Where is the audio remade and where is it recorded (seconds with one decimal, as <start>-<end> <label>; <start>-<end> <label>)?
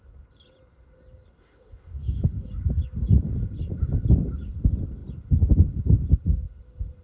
0.0-1.4 recorded; 1.4-2.5 remade; 2.5-7.0 recorded